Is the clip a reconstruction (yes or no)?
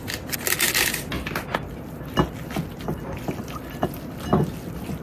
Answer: no